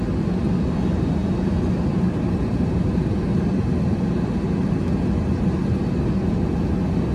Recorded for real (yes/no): yes